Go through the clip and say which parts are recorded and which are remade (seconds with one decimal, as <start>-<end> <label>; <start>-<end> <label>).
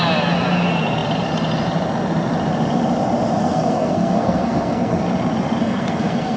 0.0-3.4 recorded; 3.4-5.0 remade; 5.0-5.6 recorded; 5.6-6.4 remade